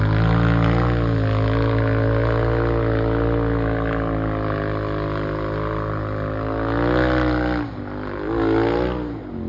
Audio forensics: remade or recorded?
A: recorded